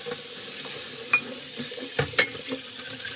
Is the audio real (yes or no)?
yes